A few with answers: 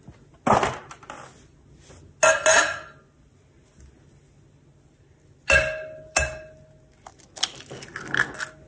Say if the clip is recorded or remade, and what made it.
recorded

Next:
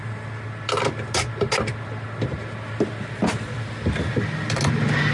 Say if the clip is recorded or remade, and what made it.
recorded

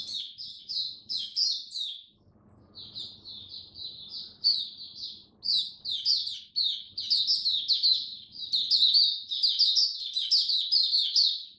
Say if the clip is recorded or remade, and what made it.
recorded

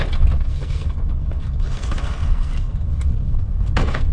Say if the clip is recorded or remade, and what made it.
remade, codec, SNAC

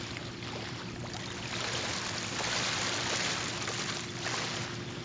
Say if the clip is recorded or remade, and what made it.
recorded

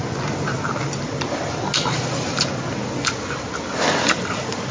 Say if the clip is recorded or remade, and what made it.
recorded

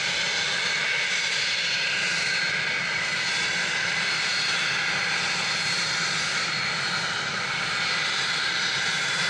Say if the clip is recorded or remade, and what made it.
recorded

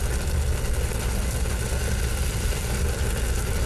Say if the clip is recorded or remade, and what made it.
recorded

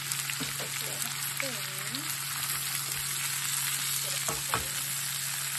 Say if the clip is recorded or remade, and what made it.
recorded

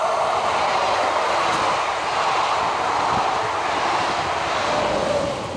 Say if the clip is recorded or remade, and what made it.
recorded